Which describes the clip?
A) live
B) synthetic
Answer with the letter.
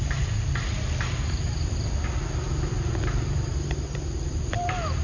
A